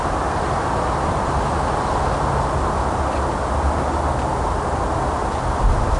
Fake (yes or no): no